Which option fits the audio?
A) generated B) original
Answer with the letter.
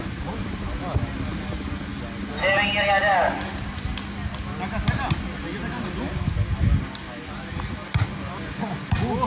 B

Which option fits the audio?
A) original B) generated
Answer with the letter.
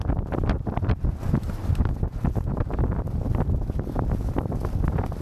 A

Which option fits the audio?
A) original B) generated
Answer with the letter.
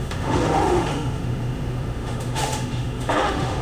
B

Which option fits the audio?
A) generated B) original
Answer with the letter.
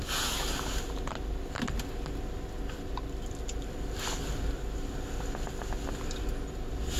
B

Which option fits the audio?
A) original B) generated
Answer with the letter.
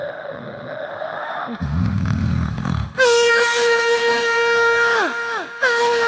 B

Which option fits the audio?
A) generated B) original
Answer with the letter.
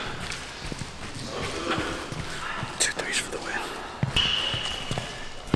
B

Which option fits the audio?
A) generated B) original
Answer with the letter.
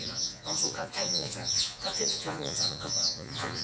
A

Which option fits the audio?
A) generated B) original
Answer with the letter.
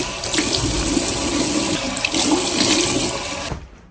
B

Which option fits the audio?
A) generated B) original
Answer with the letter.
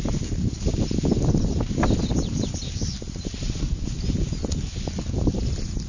B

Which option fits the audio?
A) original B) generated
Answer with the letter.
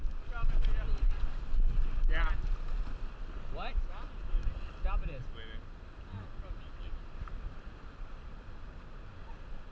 A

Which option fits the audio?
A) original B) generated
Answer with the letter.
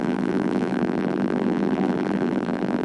B